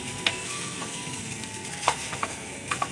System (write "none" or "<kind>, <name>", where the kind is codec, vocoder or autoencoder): codec, SNAC